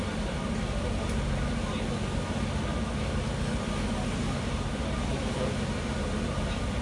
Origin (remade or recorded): recorded